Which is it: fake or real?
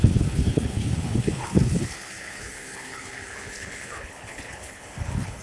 fake